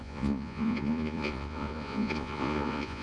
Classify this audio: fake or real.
fake